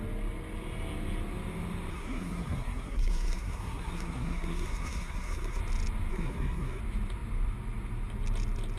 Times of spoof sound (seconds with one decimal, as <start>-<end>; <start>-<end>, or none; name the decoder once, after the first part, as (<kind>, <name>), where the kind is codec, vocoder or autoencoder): 1.9-5.6 (codec, SNAC); 6.1-6.8

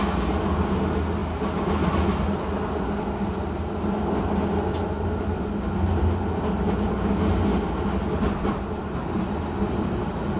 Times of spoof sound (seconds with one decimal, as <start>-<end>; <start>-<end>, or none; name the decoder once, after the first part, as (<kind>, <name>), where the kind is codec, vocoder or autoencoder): none

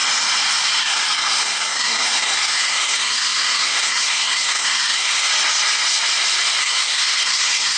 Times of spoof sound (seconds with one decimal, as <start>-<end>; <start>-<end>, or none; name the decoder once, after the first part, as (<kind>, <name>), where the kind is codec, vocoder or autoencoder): 0.8-5.3 (codec, SNAC); 6.6-7.8

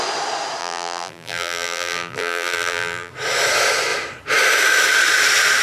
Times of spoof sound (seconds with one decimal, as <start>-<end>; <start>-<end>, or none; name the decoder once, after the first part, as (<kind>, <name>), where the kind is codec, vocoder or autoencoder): 0.6-3.1 (vocoder, BigVGAN v2)

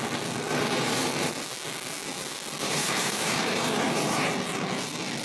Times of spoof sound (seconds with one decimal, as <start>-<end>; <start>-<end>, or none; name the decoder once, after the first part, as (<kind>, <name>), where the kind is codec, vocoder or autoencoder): 0.5-1.3 (vocoder, BigVGAN v2); 2.6-4.3

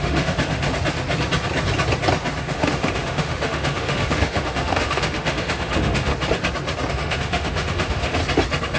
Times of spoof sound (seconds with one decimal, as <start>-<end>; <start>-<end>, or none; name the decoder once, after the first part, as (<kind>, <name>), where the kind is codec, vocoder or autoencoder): 0.0-0.7 (autoencoder, DAC-VAE); 2.4-6.1; 6.9-8.2